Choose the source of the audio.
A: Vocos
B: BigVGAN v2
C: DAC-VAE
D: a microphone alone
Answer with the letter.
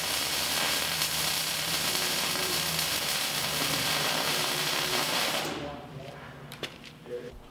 B